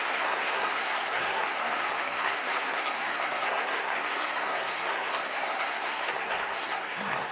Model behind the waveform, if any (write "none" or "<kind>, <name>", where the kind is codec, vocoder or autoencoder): codec, SNAC